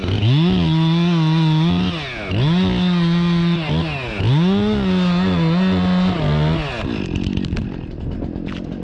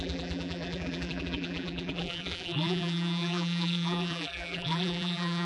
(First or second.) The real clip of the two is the first